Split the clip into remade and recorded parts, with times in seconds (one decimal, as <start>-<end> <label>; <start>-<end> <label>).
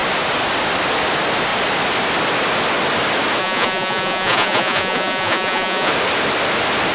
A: 0.0-3.4 recorded; 3.4-5.9 remade; 5.9-6.9 recorded